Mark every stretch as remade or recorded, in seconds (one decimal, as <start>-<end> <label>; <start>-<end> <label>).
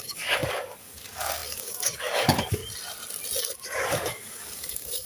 0.0-2.6 remade; 2.6-3.4 recorded; 3.4-5.1 remade